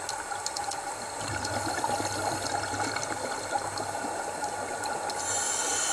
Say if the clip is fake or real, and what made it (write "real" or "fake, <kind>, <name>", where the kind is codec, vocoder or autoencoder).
real